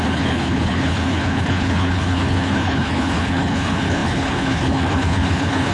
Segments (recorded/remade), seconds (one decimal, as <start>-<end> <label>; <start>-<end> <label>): 0.0-5.7 remade